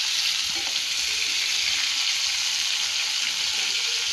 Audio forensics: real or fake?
real